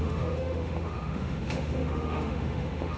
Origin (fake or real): fake